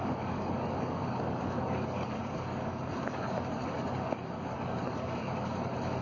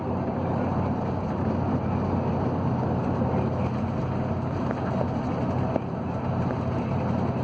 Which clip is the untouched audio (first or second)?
second